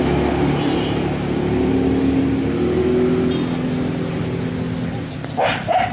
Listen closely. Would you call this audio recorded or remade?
recorded